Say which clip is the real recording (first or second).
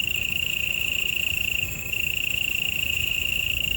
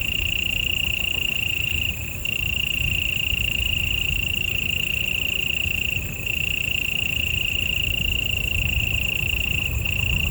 second